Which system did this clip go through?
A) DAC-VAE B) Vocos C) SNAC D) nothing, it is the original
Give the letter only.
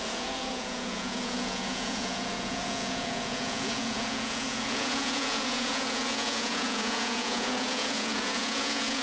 B